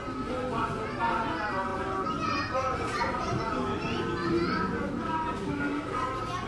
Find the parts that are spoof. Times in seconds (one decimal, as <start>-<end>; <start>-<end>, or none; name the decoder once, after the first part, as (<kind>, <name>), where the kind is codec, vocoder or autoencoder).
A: none